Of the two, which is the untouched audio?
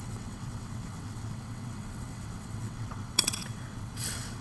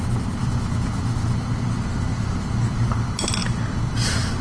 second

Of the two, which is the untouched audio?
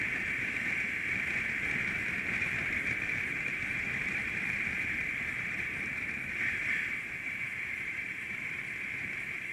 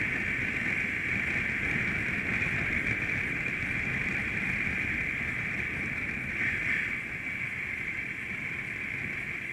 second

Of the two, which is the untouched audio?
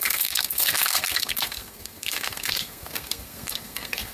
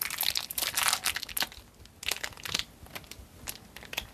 second